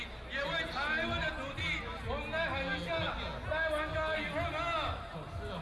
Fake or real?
real